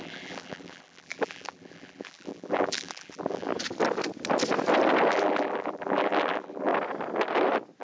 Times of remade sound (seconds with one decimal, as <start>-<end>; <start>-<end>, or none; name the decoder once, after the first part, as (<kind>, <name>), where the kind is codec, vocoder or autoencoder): 0.0-3.5 (vocoder, BigVGAN v2); 5.1-6.7